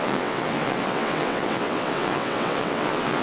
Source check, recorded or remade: remade